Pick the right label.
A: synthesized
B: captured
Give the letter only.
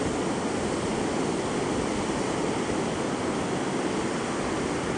B